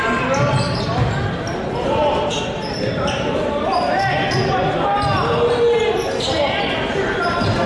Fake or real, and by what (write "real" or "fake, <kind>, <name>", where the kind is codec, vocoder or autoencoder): real